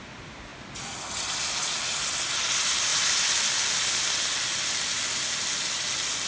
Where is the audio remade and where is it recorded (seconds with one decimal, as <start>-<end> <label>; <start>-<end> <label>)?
0.0-6.3 recorded